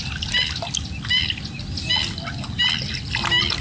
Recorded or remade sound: recorded